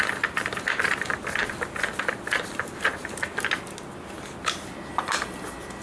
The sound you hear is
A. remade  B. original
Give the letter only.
B